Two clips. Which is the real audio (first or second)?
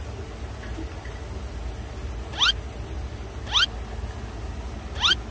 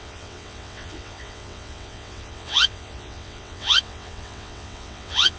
first